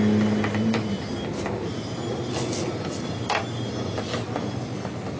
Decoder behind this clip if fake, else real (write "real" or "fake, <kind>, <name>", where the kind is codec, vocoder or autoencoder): real